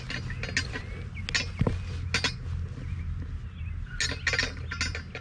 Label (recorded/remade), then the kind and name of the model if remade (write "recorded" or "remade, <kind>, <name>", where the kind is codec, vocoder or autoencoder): recorded